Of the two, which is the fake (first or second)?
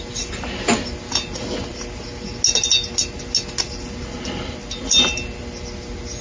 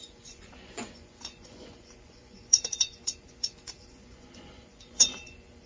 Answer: second